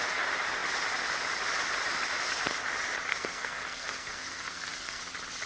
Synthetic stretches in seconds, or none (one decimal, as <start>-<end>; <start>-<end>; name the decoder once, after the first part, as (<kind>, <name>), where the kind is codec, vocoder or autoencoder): 3.1-5.0 (codec, SNAC)

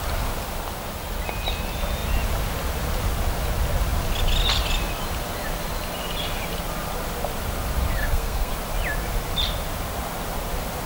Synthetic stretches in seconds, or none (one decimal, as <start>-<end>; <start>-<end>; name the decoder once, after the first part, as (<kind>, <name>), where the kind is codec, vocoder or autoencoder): 8.0-8.5 (codec, SNAC)

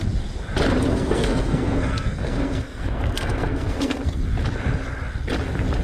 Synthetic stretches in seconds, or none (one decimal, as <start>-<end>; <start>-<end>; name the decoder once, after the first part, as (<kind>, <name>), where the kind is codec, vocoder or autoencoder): 0.9-4.2 (codec, SNAC)

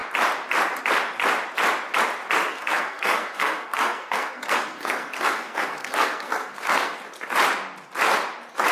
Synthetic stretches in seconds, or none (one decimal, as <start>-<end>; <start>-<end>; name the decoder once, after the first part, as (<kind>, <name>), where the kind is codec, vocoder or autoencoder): 2.5-7.0 (codec, SNAC)

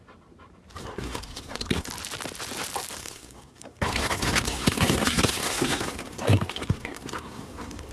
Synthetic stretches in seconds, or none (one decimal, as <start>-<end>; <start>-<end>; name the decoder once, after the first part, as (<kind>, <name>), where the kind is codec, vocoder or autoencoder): 0.8-1.9 (codec, SNAC); 3.0-7.9

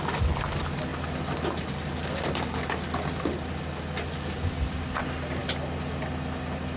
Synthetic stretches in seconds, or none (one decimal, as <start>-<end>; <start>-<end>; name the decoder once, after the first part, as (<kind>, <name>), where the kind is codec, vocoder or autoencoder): none

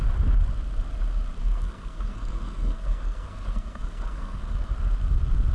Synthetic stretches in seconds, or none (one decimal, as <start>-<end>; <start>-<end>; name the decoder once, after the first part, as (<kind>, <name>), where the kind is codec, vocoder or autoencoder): 1.4-4.7 (codec, SNAC)